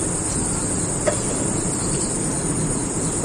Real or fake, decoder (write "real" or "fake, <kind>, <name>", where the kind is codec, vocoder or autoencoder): real